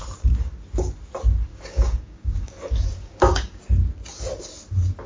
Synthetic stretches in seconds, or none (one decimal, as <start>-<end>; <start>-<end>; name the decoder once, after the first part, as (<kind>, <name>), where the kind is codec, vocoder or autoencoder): 1.5-2.5 (codec, DAC); 3.0-3.6